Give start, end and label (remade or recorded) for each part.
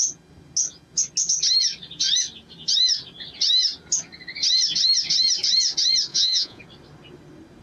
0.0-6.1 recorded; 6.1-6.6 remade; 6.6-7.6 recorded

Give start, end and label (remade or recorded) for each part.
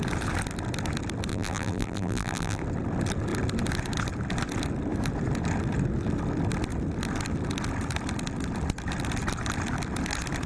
0.0-1.3 recorded; 1.3-2.6 remade; 2.6-10.5 recorded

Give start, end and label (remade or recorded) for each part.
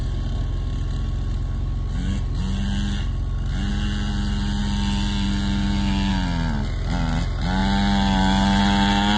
0.0-9.2 recorded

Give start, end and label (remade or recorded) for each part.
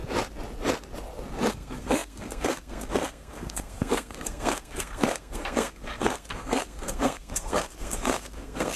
0.0-1.5 recorded; 1.5-8.8 remade